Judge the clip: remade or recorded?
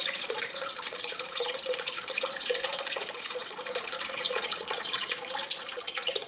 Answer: remade